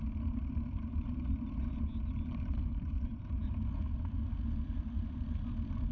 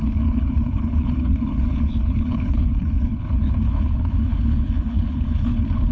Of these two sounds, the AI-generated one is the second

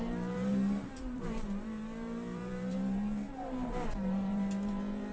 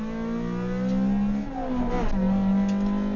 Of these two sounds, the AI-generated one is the first